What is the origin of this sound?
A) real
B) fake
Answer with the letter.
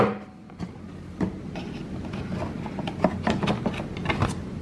A